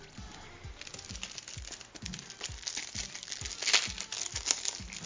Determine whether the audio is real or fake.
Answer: real